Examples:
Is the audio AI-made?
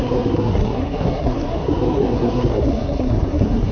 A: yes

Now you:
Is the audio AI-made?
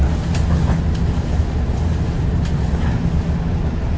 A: no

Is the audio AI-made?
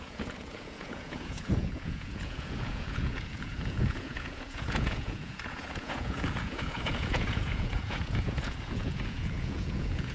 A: yes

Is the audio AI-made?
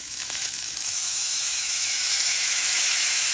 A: yes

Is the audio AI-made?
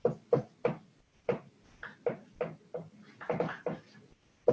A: no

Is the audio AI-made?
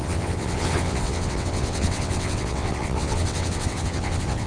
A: yes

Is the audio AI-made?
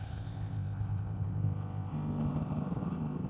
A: yes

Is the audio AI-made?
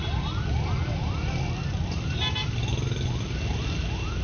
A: no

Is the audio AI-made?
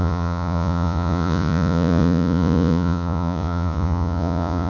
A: yes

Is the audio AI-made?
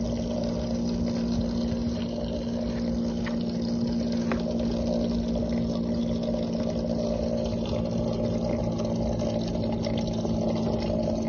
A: no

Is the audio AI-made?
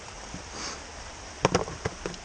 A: no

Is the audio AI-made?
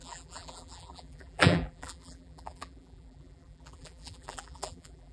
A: yes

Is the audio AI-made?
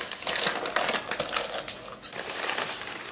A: no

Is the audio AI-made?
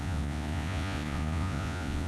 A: yes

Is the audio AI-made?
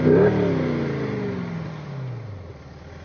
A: no